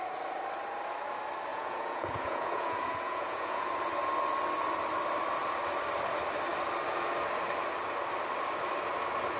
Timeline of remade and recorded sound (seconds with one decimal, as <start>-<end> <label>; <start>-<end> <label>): 0.0-1.5 recorded; 1.5-3.7 remade; 3.7-9.4 recorded